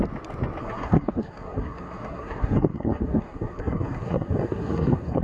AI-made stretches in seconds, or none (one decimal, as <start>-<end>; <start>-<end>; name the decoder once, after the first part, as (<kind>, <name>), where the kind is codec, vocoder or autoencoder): 0.6-5.2 (codec, SNAC)